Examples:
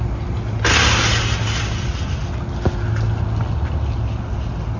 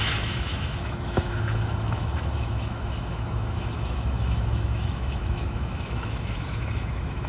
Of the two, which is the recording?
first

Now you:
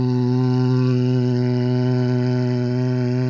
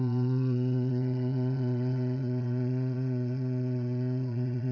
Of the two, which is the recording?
first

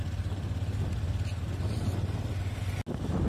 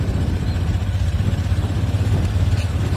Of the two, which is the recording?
first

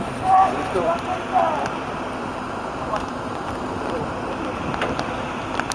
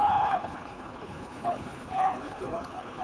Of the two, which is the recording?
first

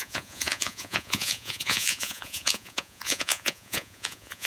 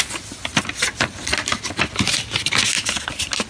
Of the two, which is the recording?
second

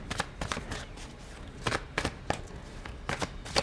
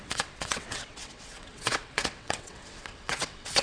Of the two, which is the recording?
first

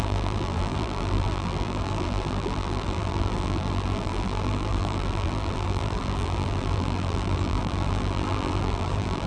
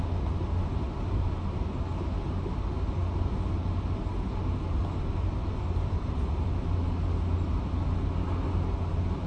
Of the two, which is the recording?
second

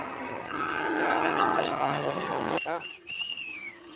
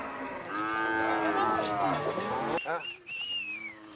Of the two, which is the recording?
second